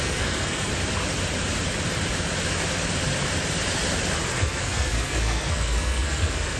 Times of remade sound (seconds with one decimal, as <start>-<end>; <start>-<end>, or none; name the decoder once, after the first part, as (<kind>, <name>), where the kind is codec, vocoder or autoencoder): 0.0-0.7 (codec, SNAC); 4.3-6.6